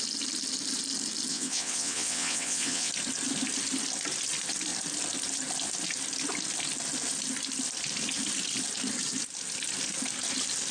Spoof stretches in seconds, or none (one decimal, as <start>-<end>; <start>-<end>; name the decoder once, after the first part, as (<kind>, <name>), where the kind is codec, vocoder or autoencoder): 1.3-2.9 (vocoder, WaveNeXt)

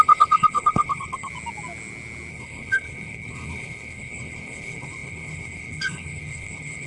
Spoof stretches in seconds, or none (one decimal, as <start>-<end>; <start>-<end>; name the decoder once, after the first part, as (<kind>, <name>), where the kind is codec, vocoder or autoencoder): 0.0-1.3 (codec, HILCodec); 2.3-6.9

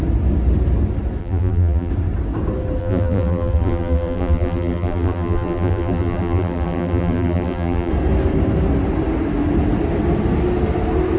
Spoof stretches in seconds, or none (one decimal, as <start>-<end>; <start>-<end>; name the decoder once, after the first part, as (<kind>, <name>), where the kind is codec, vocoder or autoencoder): 1.2-1.9 (vocoder, BigVGAN v2); 2.8-7.9

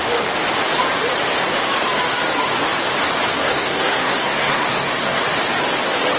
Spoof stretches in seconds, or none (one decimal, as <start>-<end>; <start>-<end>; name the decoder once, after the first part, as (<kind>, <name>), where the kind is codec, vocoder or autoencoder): 3.4-5.2 (codec, SNAC)

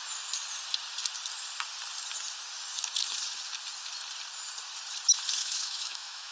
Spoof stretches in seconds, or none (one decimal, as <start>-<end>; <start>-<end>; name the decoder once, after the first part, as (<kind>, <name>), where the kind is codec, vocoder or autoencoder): 5.4-6.3 (autoencoder, DAC-VAE)

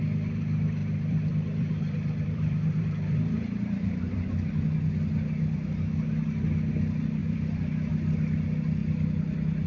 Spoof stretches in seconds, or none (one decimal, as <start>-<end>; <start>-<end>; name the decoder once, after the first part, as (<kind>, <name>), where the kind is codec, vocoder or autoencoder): 0.8-4.3 (vocoder, BigVGAN v2); 7.2-7.9

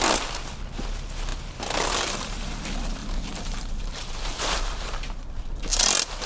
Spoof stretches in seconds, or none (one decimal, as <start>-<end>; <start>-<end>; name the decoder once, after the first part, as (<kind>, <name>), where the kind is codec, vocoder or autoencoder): 3.0-5.5 (vocoder, BigVGAN v2)

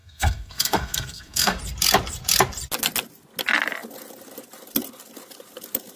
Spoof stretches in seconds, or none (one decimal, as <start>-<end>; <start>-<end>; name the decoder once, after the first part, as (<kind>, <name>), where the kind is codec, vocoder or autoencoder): 0.0-1.6 (codec, SNAC)